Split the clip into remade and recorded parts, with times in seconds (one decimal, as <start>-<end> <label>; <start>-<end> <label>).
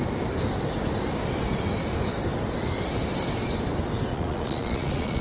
0.0-4.1 recorded; 4.1-5.2 remade